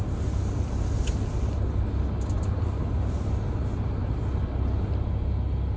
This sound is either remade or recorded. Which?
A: recorded